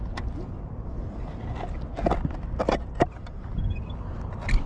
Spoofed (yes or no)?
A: no